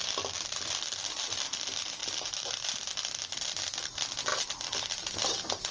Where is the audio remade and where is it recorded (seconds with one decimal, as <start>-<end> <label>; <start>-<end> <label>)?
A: 0.0-5.7 recorded